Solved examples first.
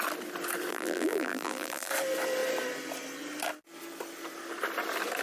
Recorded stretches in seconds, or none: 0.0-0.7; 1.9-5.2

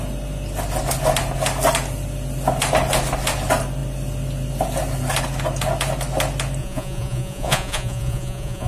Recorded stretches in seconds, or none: 0.0-6.6

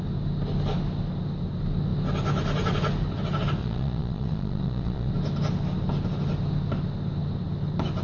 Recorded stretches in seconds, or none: 0.0-3.6; 5.1-8.0

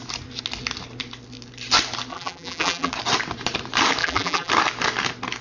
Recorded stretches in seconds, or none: 0.0-2.1; 2.9-4.0; 4.5-5.4

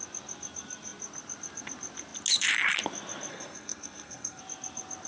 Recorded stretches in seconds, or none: 0.0-3.3; 4.4-5.1